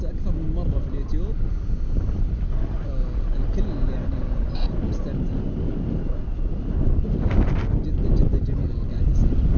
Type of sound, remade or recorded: recorded